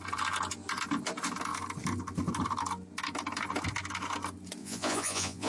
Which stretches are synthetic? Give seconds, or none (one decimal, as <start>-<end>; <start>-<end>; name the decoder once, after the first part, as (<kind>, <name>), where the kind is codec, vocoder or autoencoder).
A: 4.6-5.5 (vocoder, Vocos)